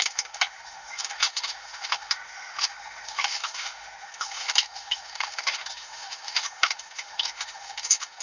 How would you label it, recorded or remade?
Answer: remade